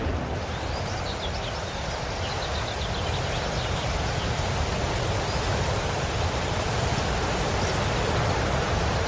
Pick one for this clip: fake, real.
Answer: real